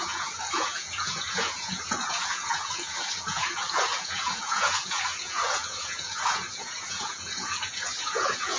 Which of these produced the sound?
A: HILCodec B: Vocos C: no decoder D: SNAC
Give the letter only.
B